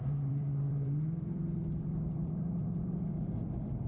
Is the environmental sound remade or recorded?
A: remade